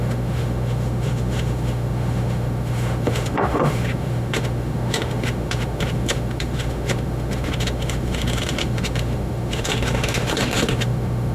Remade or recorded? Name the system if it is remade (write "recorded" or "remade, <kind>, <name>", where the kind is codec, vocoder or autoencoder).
remade, autoencoder, DAC-VAE